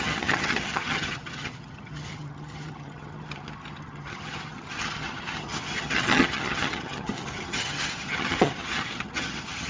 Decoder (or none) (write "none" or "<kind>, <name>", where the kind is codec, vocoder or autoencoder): vocoder, HiFi-GAN